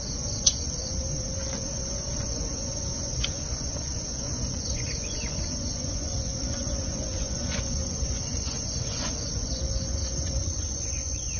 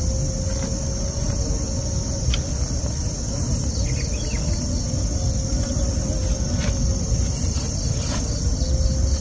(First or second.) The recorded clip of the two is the second